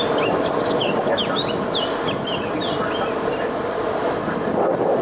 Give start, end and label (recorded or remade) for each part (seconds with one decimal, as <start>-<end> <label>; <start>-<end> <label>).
0.0-5.0 recorded